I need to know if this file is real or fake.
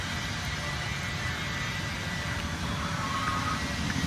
real